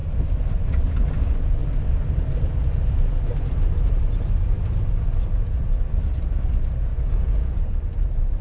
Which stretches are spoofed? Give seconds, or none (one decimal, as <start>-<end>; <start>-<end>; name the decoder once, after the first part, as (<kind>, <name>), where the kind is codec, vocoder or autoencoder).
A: 6.9-7.5 (vocoder, Vocos)